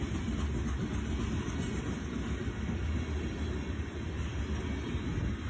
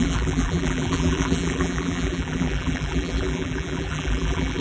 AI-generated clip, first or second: second